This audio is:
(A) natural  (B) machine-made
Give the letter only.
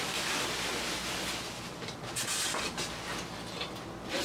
A